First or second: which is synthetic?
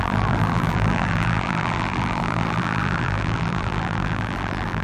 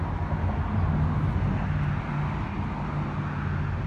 first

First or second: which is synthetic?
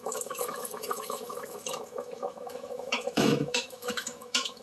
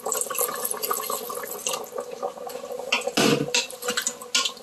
first